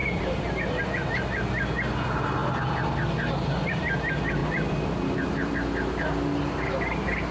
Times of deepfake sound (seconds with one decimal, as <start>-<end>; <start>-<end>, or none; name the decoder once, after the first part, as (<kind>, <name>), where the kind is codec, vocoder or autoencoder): 0.0-0.8 (vocoder, BigVGAN v2); 4.4-5.5